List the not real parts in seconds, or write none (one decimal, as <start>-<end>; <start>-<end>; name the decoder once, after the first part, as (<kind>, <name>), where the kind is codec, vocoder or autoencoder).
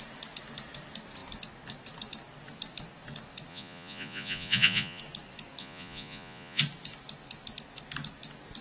3.5-5.0 (vocoder, Vocos); 5.6-6.6